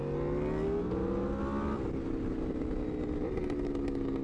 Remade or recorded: recorded